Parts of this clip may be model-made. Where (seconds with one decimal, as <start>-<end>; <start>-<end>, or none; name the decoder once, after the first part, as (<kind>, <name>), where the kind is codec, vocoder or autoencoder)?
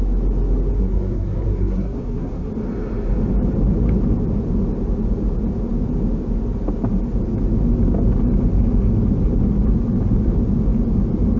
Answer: 0.8-2.5 (codec, SNAC)